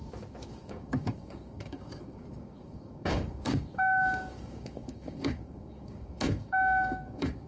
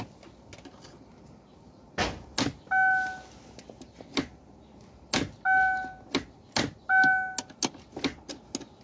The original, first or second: second